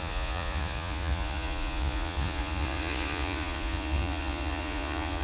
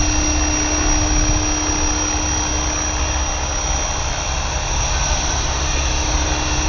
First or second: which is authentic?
second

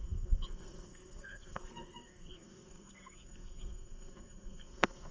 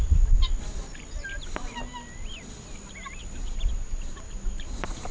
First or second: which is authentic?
second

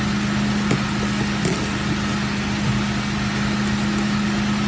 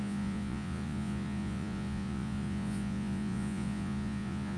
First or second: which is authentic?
first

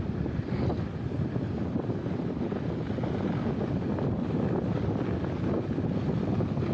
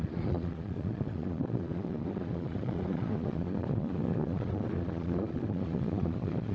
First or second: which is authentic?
first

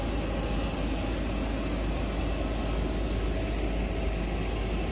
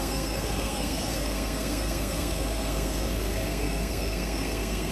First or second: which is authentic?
first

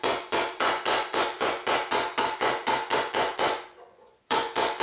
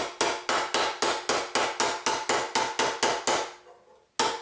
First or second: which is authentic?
second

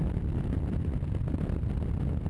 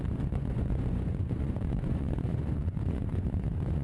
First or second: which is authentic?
first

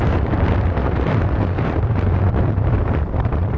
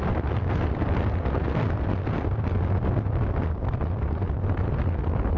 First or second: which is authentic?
second